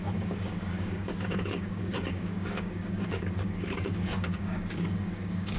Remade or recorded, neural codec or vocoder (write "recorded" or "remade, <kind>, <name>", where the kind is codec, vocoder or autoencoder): remade, codec, DAC